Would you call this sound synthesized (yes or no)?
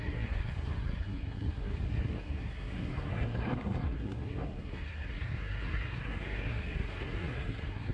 yes